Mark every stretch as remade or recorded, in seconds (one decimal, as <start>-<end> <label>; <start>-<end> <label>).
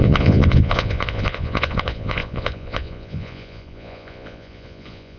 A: 0.0-5.2 remade